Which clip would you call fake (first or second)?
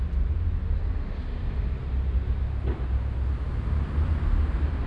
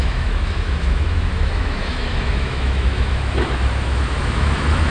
second